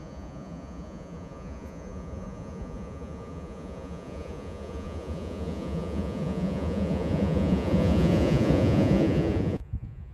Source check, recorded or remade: remade